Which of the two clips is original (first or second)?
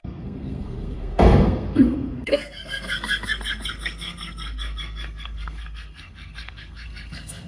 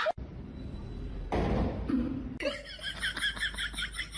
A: second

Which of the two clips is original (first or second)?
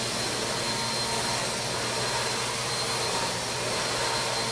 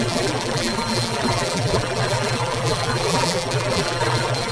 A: first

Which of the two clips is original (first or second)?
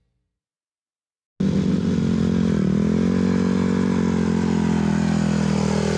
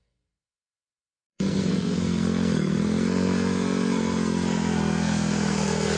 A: first